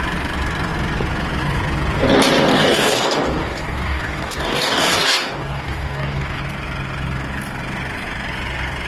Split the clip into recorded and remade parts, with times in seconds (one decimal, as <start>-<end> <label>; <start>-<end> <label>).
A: 0.0-2.5 recorded; 2.5-6.4 remade; 6.4-8.9 recorded